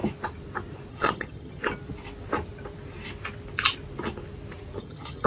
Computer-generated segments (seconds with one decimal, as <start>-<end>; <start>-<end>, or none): 0.9-1.6; 4.8-5.3